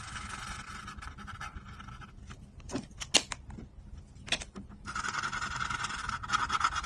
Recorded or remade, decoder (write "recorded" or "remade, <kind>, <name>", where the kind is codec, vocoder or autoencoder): recorded